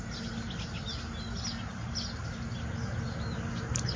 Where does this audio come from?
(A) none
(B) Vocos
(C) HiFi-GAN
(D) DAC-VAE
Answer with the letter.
A